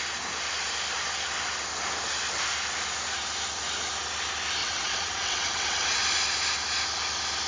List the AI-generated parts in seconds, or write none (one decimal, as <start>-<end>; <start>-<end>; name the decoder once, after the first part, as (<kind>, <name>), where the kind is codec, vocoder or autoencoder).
4.6-6.0 (vocoder, WaveNeXt)

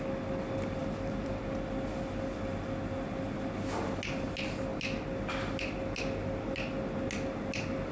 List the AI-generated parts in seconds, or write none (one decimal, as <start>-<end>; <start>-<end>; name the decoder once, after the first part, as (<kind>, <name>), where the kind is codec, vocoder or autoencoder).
0.8-1.4 (vocoder, BigVGAN v2)

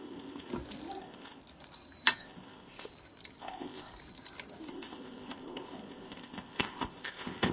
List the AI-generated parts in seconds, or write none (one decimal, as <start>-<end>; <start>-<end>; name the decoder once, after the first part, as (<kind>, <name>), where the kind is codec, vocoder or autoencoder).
0.0-0.5 (codec, ZipCodec); 1.0-1.4; 2.2-2.9; 3.4-3.9; 4.7-7.5

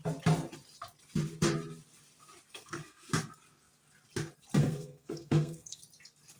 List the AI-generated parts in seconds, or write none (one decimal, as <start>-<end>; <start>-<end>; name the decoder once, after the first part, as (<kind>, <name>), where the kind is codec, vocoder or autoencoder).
2.5-3.1 (codec, SNAC); 4.6-5.8

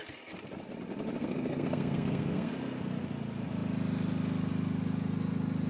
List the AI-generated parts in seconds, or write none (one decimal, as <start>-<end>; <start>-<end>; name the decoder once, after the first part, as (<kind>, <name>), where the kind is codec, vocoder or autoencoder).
1.2-2.5 (codec, SNAC)